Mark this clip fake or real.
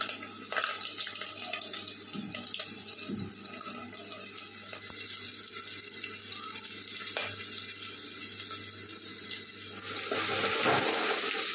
real